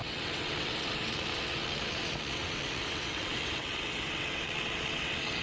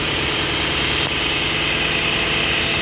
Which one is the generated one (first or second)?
first